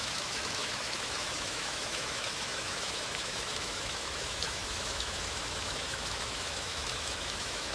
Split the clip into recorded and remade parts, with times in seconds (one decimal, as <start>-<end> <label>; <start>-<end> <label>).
0.0-7.7 remade